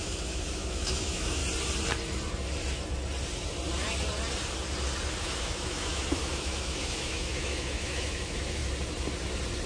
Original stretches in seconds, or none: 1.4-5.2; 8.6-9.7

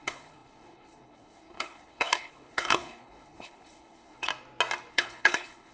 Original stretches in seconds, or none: 4.3-4.9

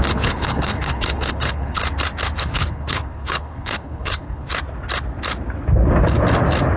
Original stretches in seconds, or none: 1.8-2.4; 4.5-6.8